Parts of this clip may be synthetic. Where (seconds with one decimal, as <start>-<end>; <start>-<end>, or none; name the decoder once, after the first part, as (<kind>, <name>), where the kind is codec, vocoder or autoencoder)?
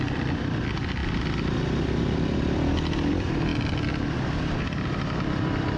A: 0.0-5.8 (vocoder, BigVGAN v2)